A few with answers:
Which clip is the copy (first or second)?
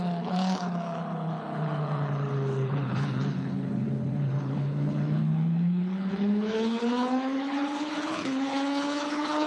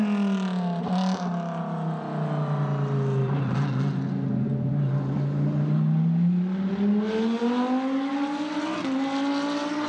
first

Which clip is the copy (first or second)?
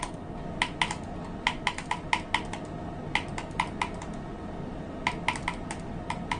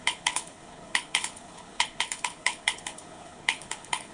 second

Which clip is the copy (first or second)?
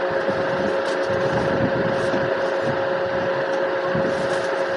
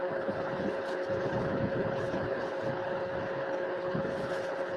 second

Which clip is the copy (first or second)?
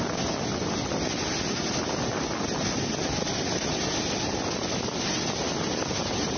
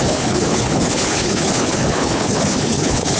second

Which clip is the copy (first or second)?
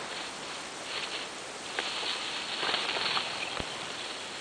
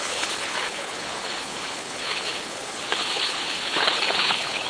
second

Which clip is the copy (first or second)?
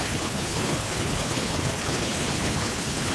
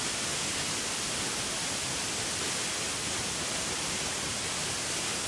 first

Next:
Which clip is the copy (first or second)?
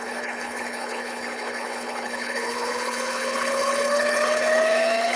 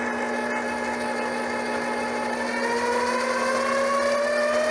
first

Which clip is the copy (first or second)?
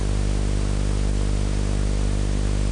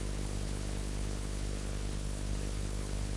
second